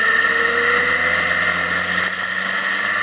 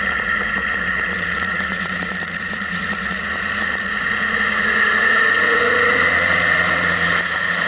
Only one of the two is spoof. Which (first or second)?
second